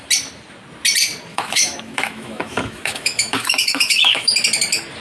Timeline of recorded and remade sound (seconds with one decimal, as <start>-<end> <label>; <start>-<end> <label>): 0.0-1.3 recorded; 1.3-4.3 remade; 4.3-5.0 recorded